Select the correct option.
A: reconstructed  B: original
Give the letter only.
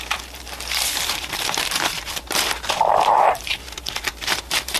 A